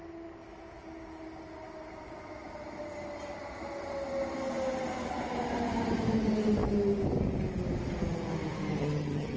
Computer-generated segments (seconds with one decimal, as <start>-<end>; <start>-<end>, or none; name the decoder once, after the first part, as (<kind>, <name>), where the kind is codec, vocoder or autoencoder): 8.8-9.4 (vocoder, HiFi-GAN)